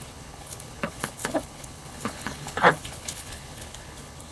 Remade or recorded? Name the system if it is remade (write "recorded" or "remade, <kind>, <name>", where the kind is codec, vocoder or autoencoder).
remade, codec, HILCodec